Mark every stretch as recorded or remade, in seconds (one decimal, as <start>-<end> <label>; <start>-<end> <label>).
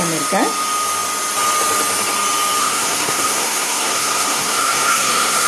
0.0-2.6 recorded; 2.6-5.5 remade